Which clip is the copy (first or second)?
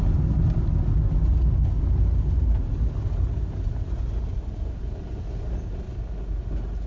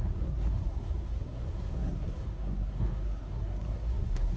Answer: second